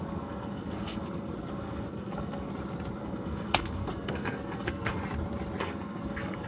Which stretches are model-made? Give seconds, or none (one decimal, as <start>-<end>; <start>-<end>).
0.0-2.5; 3.0-5.0; 5.6-6.5